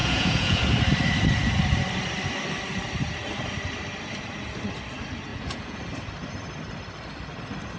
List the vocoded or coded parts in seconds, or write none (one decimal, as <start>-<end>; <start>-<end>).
0.0-0.6; 5.3-5.8